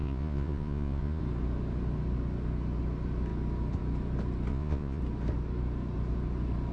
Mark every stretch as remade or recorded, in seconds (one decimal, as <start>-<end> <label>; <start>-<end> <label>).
0.0-1.2 remade; 1.2-4.5 recorded; 4.5-5.0 remade; 5.0-6.7 recorded